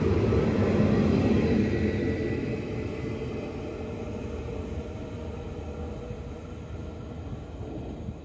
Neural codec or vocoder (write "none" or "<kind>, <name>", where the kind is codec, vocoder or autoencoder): none